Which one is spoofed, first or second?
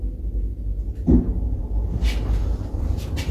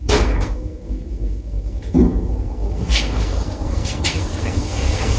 second